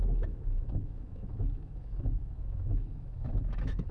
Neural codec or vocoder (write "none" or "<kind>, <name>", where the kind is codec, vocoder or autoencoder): autoencoder, DAC-VAE